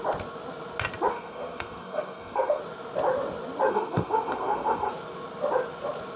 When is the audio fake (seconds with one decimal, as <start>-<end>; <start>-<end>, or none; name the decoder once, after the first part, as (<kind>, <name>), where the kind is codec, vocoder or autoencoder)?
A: 1.1-2.6 (codec, SNAC); 3.7-4.9

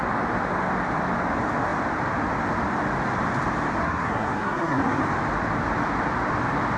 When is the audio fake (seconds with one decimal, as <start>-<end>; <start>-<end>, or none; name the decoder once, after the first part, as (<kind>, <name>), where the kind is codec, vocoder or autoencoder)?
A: 3.8-5.0 (codec, SNAC)